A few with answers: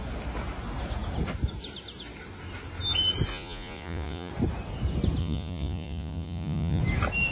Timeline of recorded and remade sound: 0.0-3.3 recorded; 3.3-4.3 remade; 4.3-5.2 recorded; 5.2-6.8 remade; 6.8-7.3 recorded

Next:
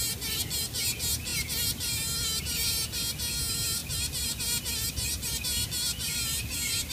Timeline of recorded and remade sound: 0.0-6.9 recorded

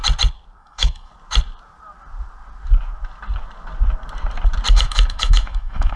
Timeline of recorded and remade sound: 0.0-0.6 recorded; 0.6-1.1 remade; 1.1-4.7 recorded; 4.7-6.0 remade

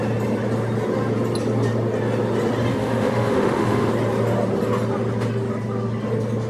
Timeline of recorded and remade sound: 0.0-2.7 recorded; 2.7-3.9 remade; 3.9-6.5 recorded

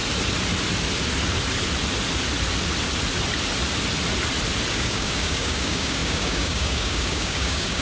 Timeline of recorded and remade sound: 0.0-4.7 recorded; 4.7-7.8 remade

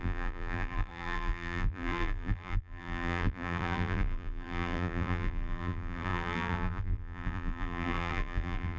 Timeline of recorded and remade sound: 0.0-8.8 remade

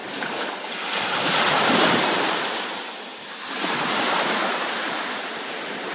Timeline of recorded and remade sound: 0.0-3.5 recorded; 3.5-5.9 remade